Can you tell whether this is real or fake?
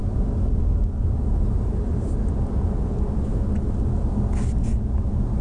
real